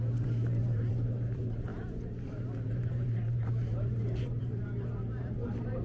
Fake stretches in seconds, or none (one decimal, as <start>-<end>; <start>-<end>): 0.0-5.8